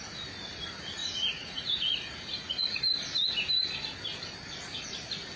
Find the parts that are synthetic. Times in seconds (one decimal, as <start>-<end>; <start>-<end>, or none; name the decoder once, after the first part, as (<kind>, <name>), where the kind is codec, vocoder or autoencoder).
1.0-2.8 (vocoder, Vocos)

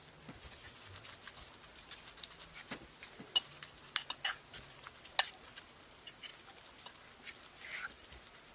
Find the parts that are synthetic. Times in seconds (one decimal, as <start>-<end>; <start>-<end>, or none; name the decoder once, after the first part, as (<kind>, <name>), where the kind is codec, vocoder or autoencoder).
none

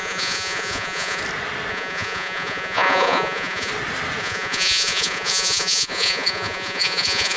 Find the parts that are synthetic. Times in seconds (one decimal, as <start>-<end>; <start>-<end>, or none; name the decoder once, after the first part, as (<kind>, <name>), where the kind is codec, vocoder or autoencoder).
0.0-1.2 (vocoder, Vocos); 1.7-3.7; 4.2-7.4

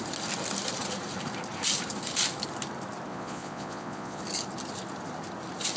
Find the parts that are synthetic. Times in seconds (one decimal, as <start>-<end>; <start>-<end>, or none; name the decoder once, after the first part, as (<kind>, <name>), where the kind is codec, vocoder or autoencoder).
3.1-4.2 (vocoder, Vocos)